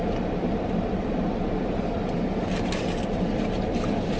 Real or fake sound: fake